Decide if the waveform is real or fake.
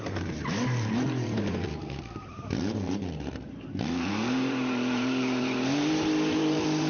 fake